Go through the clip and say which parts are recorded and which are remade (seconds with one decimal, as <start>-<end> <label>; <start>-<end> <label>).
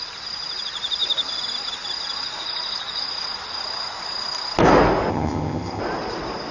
0.0-5.1 recorded; 5.1-5.8 remade; 5.8-6.5 recorded